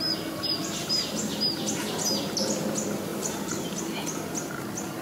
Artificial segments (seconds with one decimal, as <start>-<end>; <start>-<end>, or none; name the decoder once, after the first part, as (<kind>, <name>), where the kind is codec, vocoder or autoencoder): 3.1-3.8 (vocoder, BigVGAN v2)